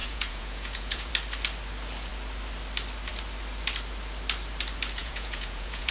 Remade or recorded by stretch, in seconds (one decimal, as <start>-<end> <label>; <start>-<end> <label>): 0.0-1.1 remade; 1.1-5.0 recorded; 5.0-5.9 remade